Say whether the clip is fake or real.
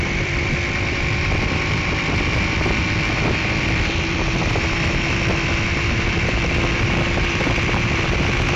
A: fake